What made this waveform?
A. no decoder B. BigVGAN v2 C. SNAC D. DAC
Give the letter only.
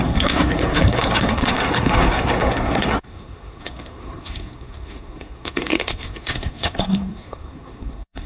C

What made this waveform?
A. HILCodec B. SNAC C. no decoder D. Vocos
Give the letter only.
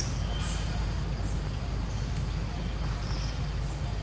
C